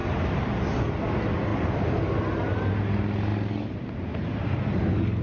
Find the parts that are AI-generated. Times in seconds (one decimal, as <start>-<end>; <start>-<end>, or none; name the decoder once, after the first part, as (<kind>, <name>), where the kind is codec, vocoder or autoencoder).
none